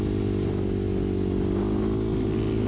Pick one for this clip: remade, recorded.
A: recorded